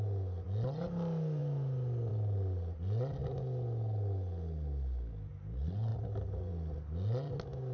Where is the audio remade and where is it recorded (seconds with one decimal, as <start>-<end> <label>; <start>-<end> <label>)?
0.0-7.7 recorded

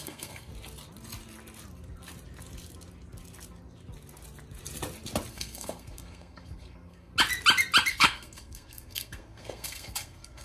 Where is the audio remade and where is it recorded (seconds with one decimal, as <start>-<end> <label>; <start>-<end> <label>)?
0.0-0.5 remade; 0.5-5.3 recorded; 5.3-7.1 remade; 7.1-7.9 recorded; 7.9-10.4 remade

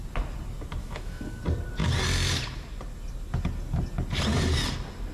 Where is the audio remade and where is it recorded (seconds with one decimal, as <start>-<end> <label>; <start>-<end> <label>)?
0.0-0.8 recorded; 0.8-1.4 remade; 1.4-5.1 recorded

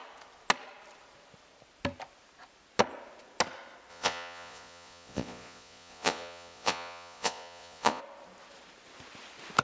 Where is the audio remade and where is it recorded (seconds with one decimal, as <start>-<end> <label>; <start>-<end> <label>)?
0.0-3.9 recorded; 3.9-8.0 remade; 8.0-9.6 recorded